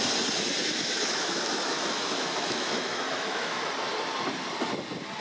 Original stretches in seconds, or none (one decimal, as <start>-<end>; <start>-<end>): 0.0-0.6; 3.7-5.2